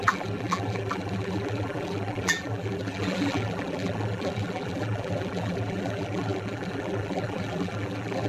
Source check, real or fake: fake